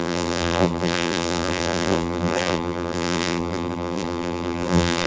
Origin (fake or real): fake